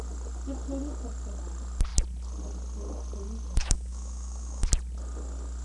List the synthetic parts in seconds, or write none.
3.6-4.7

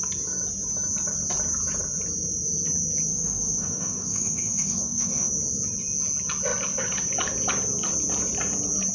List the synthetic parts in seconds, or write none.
3.1-5.3